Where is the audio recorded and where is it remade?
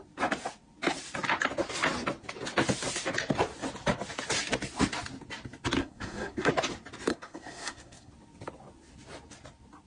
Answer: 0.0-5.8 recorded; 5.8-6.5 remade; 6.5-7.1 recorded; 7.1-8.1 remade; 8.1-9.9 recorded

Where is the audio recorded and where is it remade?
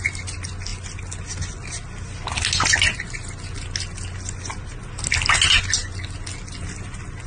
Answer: 0.0-7.3 recorded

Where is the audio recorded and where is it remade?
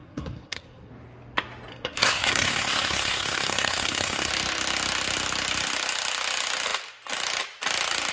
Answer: 0.0-0.9 remade; 0.9-1.7 recorded; 1.7-4.3 remade; 4.3-8.1 recorded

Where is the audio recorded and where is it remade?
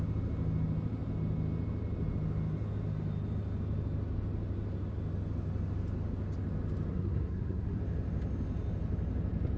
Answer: 0.0-6.9 recorded; 6.9-7.8 remade; 7.8-9.6 recorded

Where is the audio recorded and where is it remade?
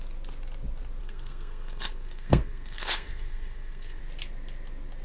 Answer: 0.0-1.0 recorded; 1.0-4.0 remade; 4.0-5.0 recorded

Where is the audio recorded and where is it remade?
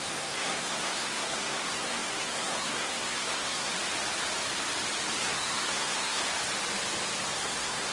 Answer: 0.0-3.7 remade; 3.7-5.2 recorded; 5.2-6.2 remade; 6.2-7.3 recorded; 7.3-7.9 remade